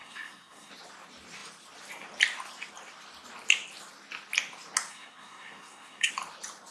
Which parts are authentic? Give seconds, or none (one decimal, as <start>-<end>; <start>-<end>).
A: 0.7-4.9; 6.1-6.7

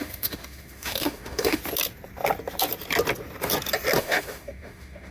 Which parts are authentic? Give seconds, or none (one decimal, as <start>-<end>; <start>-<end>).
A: 1.6-4.0

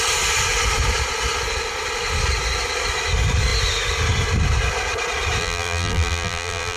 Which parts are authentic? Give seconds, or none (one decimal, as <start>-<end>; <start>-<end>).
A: 0.0-5.4

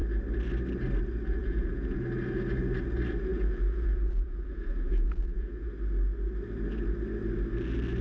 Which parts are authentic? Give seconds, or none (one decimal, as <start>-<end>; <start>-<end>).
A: 0.0-1.4; 2.0-3.3; 5.7-8.0

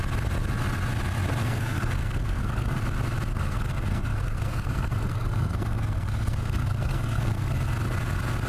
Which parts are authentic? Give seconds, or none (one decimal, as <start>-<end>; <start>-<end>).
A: 0.0-1.4; 2.8-3.3; 7.5-8.5

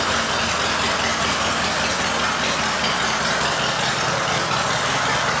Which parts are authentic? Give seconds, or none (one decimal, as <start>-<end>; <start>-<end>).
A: 0.0-5.4

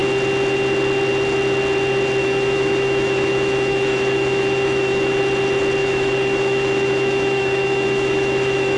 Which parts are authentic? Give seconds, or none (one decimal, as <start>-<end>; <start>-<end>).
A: 0.0-2.2; 5.2-5.8